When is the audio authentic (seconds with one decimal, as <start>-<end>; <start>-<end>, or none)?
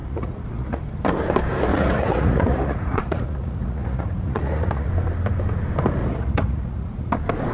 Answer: 0.8-1.7; 4.9-6.0; 7.1-7.5